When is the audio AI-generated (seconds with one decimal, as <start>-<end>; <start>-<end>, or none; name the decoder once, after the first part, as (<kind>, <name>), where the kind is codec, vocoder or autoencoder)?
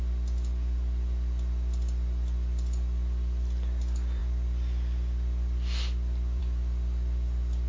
none